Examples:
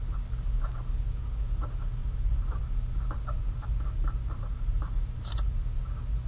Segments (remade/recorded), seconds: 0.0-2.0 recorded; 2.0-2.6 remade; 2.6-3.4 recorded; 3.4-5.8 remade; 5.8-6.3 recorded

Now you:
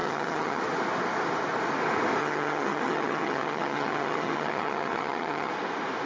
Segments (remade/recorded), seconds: 0.0-0.6 remade; 0.6-2.2 recorded; 2.2-5.5 remade; 5.5-6.1 recorded